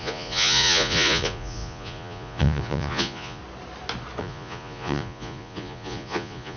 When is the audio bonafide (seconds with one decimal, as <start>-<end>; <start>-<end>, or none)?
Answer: 3.4-4.2

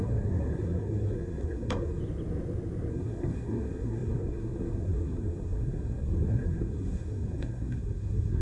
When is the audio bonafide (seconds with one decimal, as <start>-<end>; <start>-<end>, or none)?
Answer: 2.0-2.9